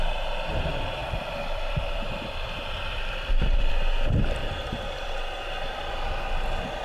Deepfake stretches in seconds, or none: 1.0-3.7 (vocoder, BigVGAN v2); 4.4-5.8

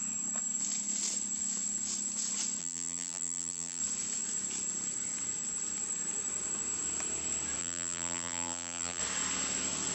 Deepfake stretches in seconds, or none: 2.6-3.8 (vocoder, BigVGAN v2); 7.6-9.0